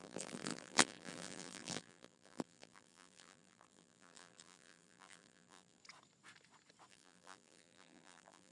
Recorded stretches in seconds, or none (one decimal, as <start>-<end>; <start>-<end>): 5.8-6.9